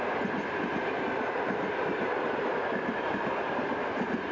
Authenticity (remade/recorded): recorded